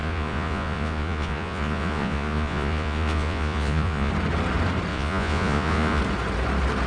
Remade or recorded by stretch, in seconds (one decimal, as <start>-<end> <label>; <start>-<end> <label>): 0.0-4.1 remade; 4.1-4.9 recorded; 4.9-6.0 remade; 6.0-6.9 recorded